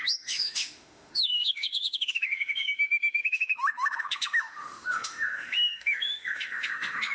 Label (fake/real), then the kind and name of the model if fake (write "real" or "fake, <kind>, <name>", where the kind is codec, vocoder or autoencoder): fake, autoencoder, DAC-VAE